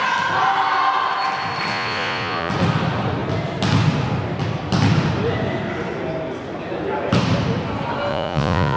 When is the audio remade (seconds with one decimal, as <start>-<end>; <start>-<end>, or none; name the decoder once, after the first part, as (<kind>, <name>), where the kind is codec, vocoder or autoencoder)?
1.7-2.5 (vocoder, Vocos); 8.1-8.8